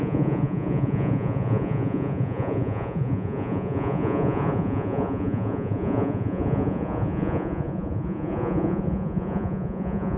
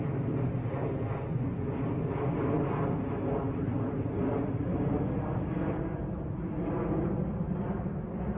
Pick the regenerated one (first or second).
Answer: first